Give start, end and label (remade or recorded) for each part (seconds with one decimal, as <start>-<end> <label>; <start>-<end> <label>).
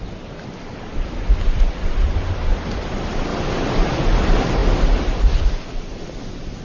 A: 0.0-3.3 remade; 3.3-3.9 recorded; 3.9-4.6 remade; 4.6-5.4 recorded; 5.4-6.6 remade